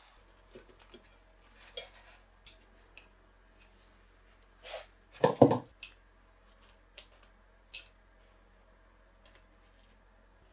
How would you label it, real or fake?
real